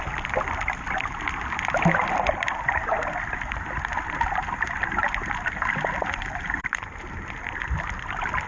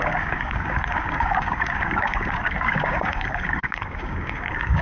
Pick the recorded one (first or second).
first